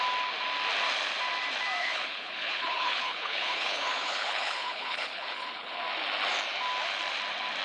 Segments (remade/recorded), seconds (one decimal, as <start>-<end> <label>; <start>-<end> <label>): 0.0-1.8 recorded; 1.8-5.8 remade; 5.8-7.6 recorded